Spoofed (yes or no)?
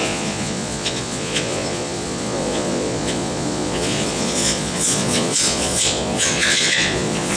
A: yes